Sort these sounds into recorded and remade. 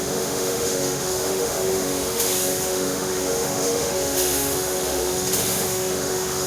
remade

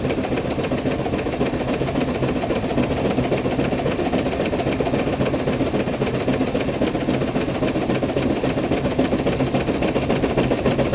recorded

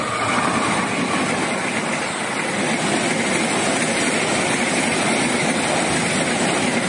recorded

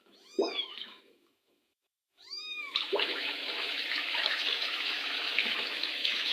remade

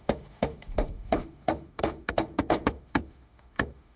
remade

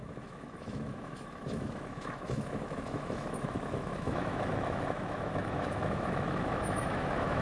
remade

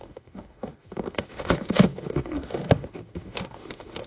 remade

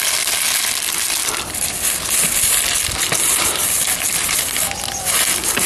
recorded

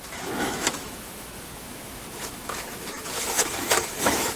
remade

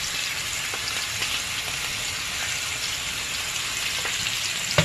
recorded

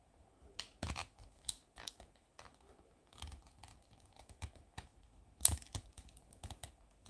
remade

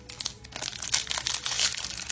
recorded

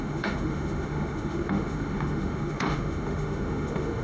remade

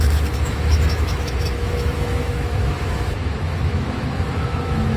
remade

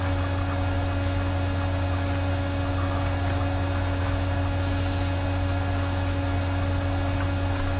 recorded